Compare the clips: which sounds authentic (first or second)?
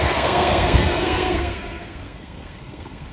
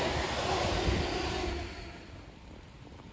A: second